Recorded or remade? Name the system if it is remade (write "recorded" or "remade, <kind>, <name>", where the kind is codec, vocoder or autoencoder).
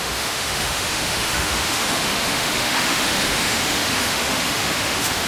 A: remade, autoencoder, DAC-VAE